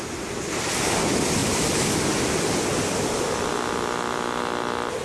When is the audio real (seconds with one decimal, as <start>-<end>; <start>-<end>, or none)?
0.0-5.0